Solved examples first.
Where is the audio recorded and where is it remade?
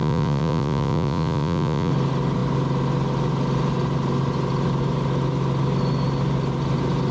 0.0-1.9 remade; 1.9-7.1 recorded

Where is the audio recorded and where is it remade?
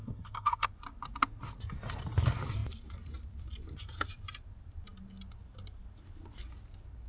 0.0-0.7 remade; 0.7-7.1 recorded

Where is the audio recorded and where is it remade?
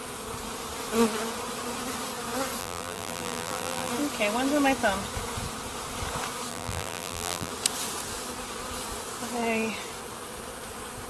0.0-2.6 recorded; 2.6-3.9 remade; 3.9-6.5 recorded; 6.5-7.5 remade; 7.5-11.1 recorded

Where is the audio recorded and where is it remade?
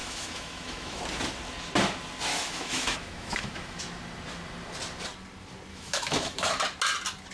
0.0-1.0 remade; 1.0-2.3 recorded; 2.3-3.8 remade; 3.8-5.7 recorded; 5.7-6.5 remade; 6.5-7.3 recorded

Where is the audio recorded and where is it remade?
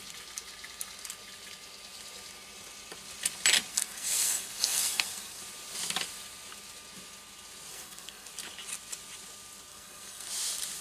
0.0-3.7 recorded; 3.7-5.4 remade; 5.4-7.7 recorded; 7.7-8.3 remade; 8.3-9.7 recorded; 9.7-10.3 remade; 10.3-10.8 recorded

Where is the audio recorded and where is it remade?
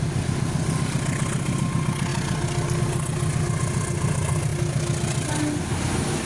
0.0-6.3 recorded